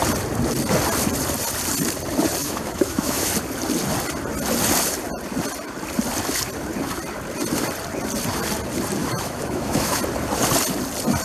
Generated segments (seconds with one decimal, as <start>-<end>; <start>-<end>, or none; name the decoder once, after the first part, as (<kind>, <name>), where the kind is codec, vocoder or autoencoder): 2.4-3.3 (autoencoder, DAC-VAE); 9.0-10.0